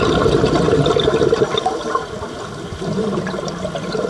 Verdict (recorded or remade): recorded